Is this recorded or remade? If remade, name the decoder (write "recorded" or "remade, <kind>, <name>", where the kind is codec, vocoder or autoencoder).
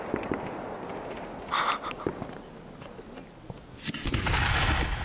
recorded